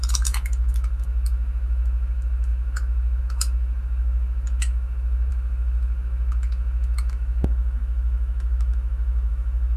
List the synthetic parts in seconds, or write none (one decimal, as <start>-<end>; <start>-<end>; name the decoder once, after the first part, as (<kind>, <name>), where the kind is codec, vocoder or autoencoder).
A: 0.0-9.8 (autoencoder, DAC-VAE)